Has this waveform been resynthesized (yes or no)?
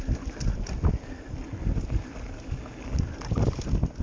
no